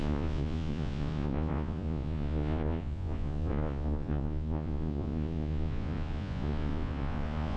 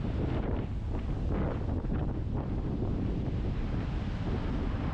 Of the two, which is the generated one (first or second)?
first